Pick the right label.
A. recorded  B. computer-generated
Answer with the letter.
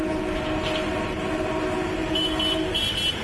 A